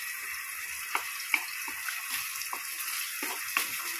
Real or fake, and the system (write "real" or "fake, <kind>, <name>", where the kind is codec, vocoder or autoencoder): real